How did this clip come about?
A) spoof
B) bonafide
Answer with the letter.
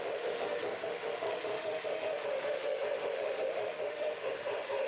A